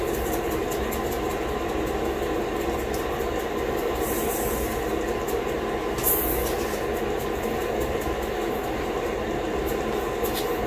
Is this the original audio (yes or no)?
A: yes